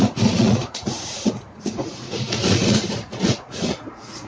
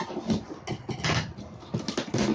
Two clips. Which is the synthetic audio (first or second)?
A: first